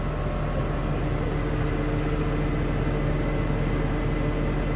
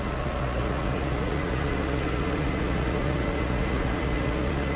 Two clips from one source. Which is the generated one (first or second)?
second